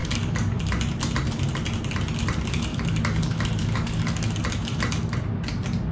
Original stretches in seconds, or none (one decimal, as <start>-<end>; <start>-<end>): 0.6-2.7; 4.4-5.9